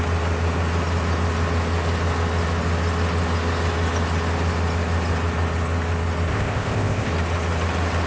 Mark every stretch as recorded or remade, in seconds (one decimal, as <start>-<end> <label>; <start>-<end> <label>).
0.0-6.3 recorded; 6.3-7.1 remade; 7.1-8.1 recorded

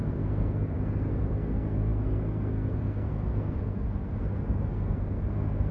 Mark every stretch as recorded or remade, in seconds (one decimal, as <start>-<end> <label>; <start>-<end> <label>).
0.0-5.7 remade

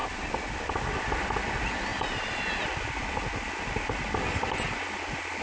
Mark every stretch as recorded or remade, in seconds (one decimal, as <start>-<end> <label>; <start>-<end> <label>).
0.0-1.9 recorded; 1.9-2.4 remade; 2.4-5.4 recorded

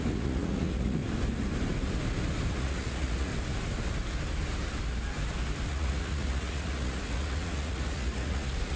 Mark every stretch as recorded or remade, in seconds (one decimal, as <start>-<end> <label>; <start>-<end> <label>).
0.0-1.0 remade; 1.0-2.5 recorded; 2.5-3.3 remade; 3.3-5.7 recorded; 5.7-8.8 remade

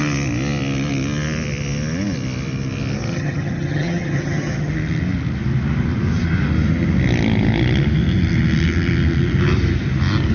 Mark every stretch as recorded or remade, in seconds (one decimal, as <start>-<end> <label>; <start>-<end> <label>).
0.0-3.1 recorded; 3.1-4.7 remade; 4.7-10.3 recorded